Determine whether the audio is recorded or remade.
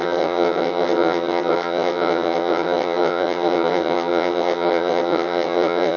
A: remade